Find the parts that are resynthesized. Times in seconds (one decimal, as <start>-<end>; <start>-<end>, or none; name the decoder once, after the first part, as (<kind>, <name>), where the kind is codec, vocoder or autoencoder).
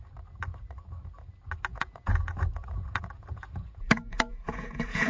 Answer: 1.7-5.1 (vocoder, Vocos)